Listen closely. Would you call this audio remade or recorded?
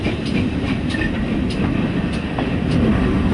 recorded